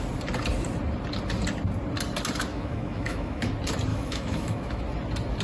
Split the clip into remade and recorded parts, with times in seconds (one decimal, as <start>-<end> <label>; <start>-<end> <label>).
0.0-2.5 recorded; 2.5-3.5 remade; 3.5-3.9 recorded; 3.9-4.8 remade; 4.8-5.4 recorded